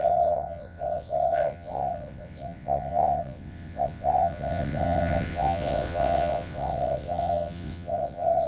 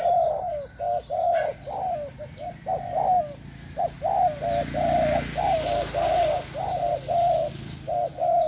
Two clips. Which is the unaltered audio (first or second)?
second